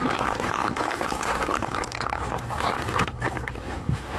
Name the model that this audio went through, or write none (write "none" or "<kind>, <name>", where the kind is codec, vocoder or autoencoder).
codec, SNAC